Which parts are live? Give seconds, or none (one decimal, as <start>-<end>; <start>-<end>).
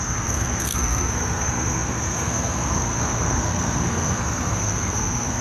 none